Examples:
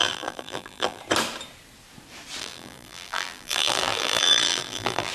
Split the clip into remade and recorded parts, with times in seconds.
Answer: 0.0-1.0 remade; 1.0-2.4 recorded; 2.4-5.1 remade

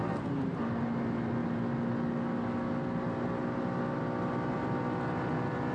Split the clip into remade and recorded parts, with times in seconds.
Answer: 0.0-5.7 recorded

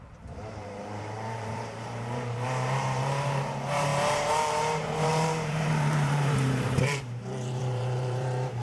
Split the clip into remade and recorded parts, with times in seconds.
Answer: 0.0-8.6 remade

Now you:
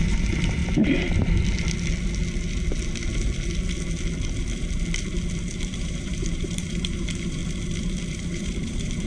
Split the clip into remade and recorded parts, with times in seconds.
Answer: 0.0-0.6 remade; 0.6-5.8 recorded; 5.8-7.4 remade; 7.4-8.1 recorded; 8.1-9.1 remade